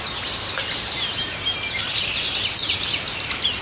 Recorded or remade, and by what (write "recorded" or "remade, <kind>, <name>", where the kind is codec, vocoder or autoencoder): recorded